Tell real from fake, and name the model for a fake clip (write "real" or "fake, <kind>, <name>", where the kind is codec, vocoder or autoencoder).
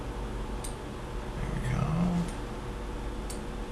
real